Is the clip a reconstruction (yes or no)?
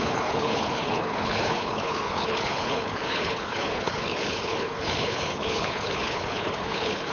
yes